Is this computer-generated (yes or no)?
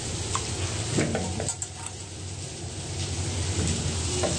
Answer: no